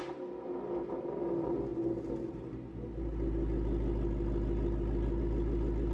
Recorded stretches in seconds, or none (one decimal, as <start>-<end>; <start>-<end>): 0.0-5.9